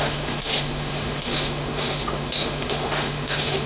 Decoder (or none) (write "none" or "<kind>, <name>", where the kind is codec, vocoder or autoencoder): autoencoder, DAC-VAE